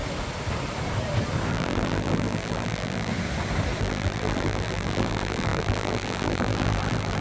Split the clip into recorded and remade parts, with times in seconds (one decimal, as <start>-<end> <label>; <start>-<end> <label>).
0.0-1.5 recorded; 1.5-3.1 remade; 3.1-3.8 recorded; 3.8-7.2 remade